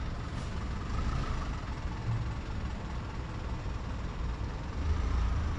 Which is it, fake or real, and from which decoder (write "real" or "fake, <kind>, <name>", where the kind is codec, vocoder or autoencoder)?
real